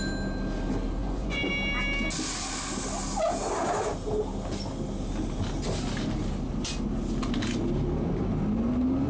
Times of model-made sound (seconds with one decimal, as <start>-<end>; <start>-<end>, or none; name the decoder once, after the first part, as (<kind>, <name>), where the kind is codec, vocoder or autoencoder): 1.0-1.5 (vocoder, Vocos)